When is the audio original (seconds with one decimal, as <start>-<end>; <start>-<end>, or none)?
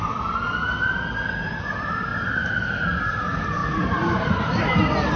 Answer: 0.0-2.1; 3.0-3.6; 4.8-5.2